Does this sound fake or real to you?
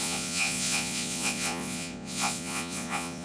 fake